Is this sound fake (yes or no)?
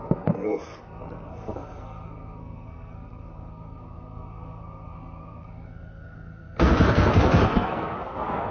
yes